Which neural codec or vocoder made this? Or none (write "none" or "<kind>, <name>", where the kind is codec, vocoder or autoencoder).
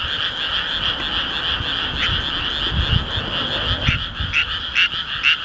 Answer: none